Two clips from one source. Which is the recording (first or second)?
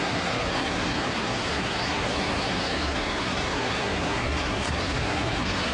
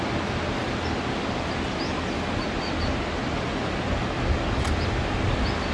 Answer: second